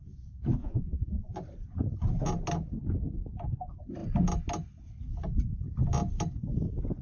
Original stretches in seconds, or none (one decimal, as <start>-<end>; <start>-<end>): 0.0-0.6; 1.3-7.0